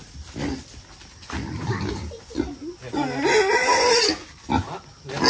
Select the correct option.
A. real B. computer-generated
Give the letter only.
A